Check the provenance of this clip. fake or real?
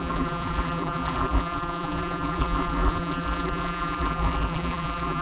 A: fake